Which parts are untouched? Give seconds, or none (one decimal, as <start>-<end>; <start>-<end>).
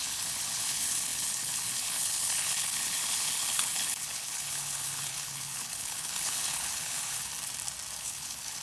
7.3-8.0